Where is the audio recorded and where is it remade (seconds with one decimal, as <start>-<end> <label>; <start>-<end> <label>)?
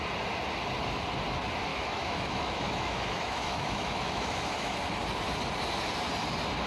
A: 0.0-1.7 recorded; 1.7-4.8 remade; 4.8-6.7 recorded